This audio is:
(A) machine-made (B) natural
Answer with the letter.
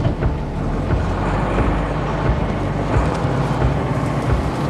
B